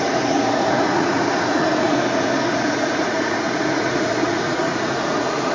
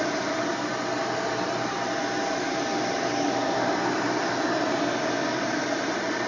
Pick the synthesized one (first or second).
first